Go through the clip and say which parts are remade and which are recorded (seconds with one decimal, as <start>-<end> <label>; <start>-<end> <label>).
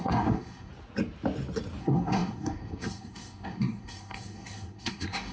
0.0-0.7 remade; 0.7-1.8 recorded; 1.8-5.3 remade